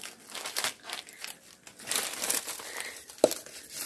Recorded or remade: recorded